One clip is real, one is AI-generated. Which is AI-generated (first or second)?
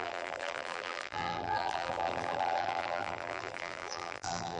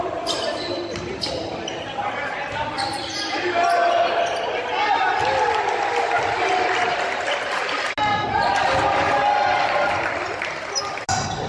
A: first